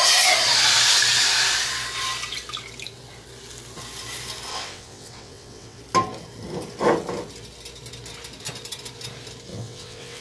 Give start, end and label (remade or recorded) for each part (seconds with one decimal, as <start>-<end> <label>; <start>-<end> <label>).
0.0-4.5 recorded; 4.5-5.8 remade; 5.8-9.5 recorded; 9.5-10.2 remade

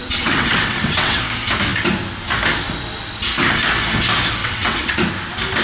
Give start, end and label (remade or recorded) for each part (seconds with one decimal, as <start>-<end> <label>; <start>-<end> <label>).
0.0-1.2 remade; 1.2-4.4 recorded; 4.4-5.1 remade; 5.1-5.6 recorded